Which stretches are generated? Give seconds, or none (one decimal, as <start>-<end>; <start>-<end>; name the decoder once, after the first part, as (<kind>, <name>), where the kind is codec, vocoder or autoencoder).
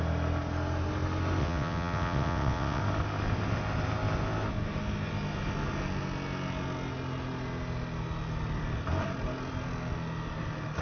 1.4-2.8 (vocoder, WaveNeXt)